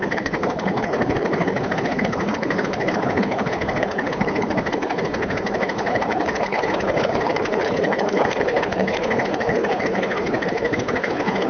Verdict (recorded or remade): remade